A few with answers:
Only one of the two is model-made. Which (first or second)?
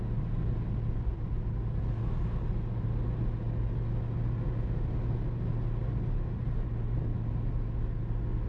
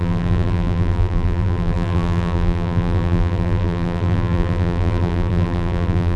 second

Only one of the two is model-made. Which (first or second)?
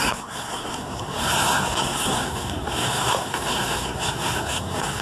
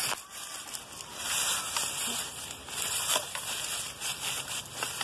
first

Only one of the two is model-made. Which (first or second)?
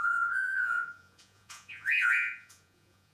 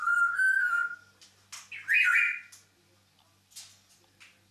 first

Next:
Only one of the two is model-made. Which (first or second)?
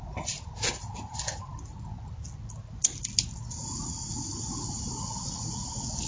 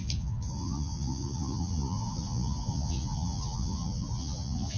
second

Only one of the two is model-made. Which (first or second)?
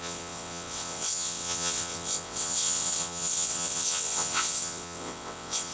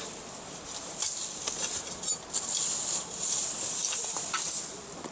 first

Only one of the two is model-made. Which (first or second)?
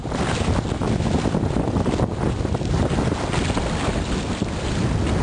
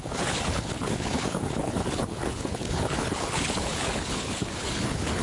second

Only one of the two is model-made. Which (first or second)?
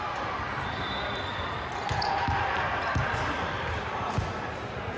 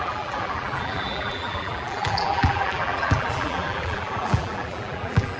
second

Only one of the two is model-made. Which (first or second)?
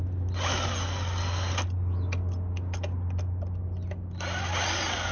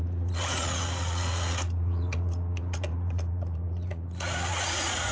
second